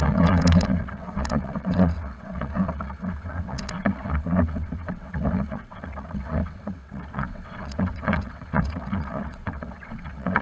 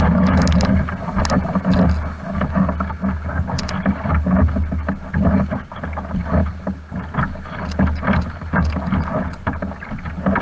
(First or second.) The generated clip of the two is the first